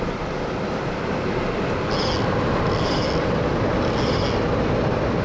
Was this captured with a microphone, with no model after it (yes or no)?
yes